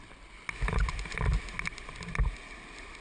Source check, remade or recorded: recorded